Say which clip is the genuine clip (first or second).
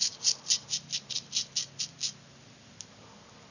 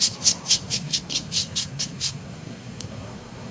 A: first